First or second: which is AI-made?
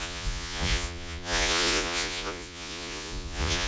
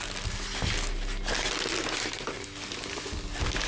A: first